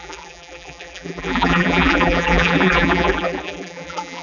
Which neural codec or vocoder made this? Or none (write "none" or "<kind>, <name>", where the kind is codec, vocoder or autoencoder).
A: vocoder, BigVGAN v2